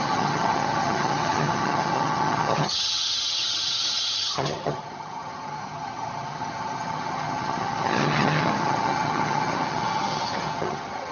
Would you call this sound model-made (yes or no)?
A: yes